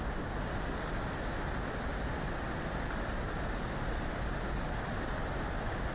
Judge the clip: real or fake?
real